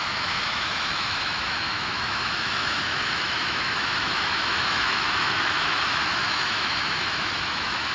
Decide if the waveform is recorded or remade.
remade